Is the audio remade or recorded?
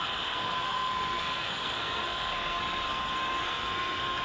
remade